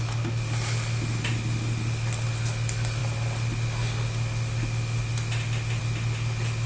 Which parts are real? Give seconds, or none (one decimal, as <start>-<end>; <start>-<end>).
0.0-6.7